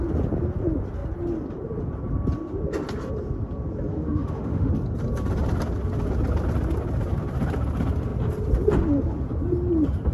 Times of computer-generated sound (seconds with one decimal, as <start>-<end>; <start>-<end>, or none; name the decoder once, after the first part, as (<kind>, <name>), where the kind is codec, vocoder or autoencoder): 3.9-4.7 (autoencoder, DAC-VAE)